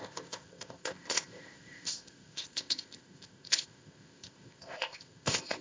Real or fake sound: fake